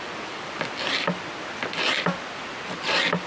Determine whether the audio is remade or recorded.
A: recorded